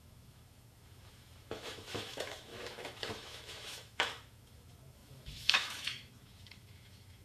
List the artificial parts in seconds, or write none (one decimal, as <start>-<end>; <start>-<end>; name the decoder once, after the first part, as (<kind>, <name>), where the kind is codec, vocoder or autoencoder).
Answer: 0.0-7.2 (autoencoder, DAC-VAE)